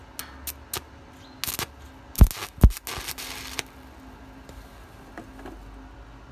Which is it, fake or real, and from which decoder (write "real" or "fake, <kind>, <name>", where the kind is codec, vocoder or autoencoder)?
real